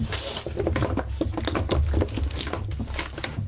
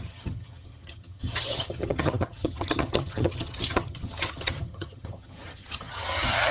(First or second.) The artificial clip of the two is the second